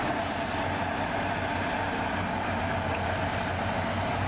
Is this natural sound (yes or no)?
yes